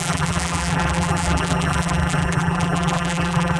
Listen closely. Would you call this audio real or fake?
fake